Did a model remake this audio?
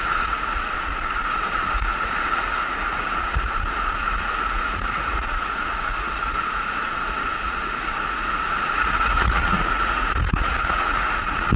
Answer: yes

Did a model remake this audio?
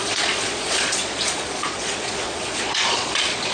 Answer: yes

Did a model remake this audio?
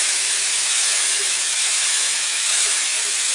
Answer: yes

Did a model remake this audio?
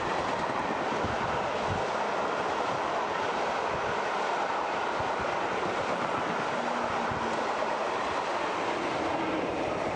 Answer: no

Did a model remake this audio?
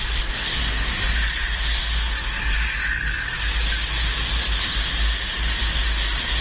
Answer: no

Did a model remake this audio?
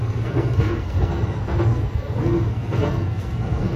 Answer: yes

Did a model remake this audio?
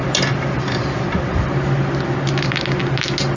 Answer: no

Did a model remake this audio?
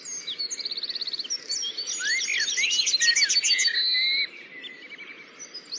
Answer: no